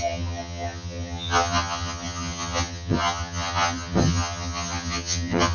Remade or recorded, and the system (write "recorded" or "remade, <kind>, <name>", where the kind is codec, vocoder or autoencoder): remade, vocoder, HiFi-GAN